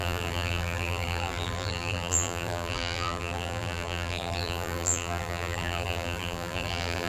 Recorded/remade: remade